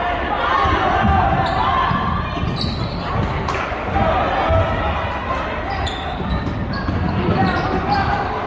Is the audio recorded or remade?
recorded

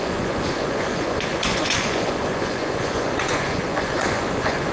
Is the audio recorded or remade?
remade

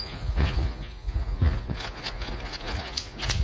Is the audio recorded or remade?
remade